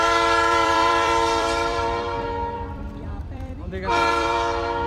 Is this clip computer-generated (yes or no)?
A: yes